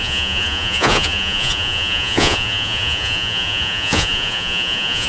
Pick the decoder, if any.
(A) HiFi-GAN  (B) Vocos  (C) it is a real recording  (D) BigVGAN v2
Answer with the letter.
B